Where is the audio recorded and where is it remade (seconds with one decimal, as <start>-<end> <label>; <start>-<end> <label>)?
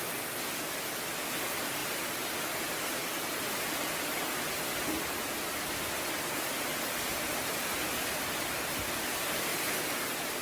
0.0-1.8 recorded; 1.8-2.6 remade; 2.6-3.0 recorded; 3.0-7.7 remade; 7.7-10.4 recorded